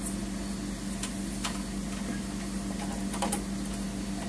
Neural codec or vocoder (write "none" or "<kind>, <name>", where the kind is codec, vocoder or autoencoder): none